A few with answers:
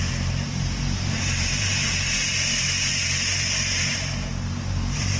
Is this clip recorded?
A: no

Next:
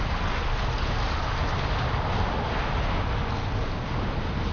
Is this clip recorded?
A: yes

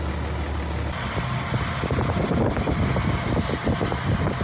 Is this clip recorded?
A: yes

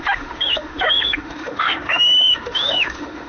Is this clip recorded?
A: no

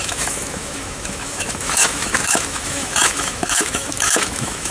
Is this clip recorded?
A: no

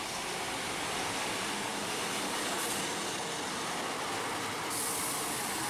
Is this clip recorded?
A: yes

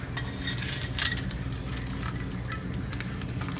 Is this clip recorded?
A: yes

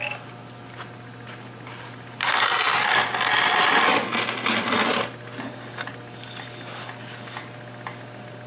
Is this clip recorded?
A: yes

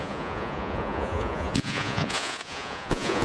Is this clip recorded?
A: no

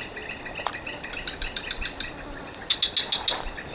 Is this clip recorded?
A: yes